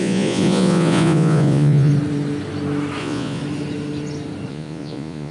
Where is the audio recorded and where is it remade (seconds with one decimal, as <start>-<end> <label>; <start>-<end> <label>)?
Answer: 0.0-1.9 remade; 1.9-3.0 recorded; 3.0-3.4 remade; 3.4-4.5 recorded; 4.5-5.3 remade